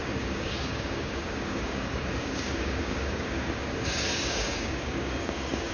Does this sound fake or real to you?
fake